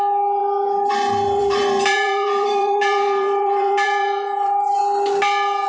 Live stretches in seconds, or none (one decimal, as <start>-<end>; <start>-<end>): 0.0-1.4; 4.8-5.7